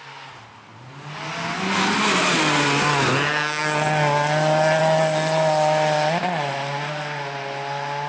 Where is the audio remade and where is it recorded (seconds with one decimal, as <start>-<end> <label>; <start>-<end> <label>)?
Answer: 0.0-8.1 recorded